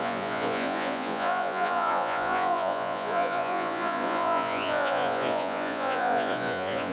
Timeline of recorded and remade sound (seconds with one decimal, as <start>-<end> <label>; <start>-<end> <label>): 0.0-6.9 remade